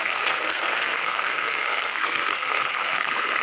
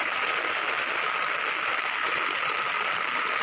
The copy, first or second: first